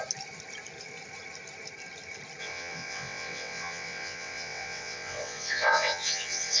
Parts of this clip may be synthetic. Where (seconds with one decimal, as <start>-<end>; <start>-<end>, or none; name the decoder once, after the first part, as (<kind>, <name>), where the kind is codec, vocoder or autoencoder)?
2.4-6.6 (vocoder, WaveNeXt)